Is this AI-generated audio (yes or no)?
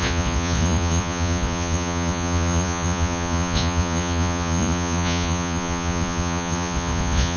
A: yes